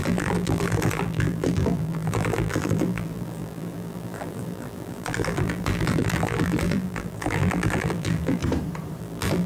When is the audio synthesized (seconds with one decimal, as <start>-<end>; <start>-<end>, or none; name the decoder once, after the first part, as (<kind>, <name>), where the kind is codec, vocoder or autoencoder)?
0.0-8.4 (vocoder, BigVGAN v2); 9.0-9.5